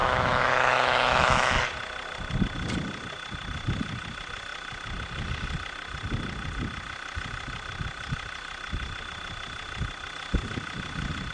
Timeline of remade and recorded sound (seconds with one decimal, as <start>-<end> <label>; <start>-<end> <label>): 0.0-1.6 remade; 1.6-11.3 recorded